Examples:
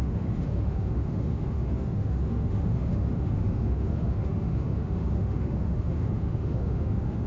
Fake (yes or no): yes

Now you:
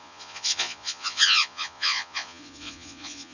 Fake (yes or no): yes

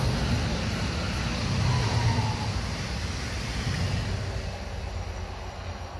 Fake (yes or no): no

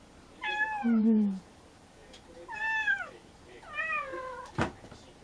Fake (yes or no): yes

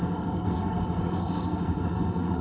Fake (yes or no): yes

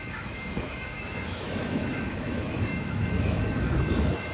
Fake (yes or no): yes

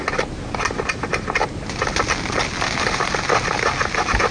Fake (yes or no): no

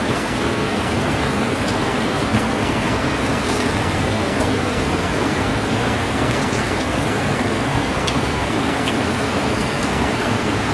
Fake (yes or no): yes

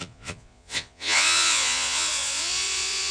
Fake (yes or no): yes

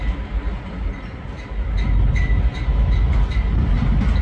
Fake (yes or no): no